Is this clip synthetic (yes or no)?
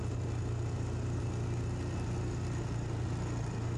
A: no